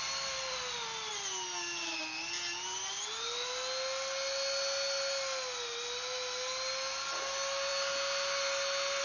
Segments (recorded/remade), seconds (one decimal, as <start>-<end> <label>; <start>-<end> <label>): 0.0-9.0 recorded